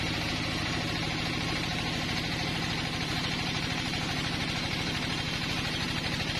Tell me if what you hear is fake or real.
fake